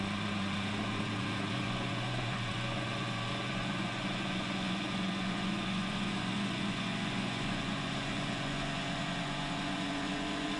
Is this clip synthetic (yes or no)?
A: yes